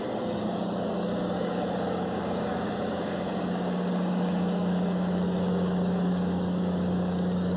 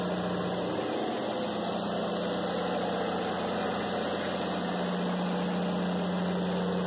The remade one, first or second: first